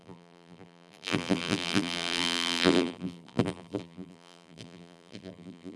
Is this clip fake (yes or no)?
yes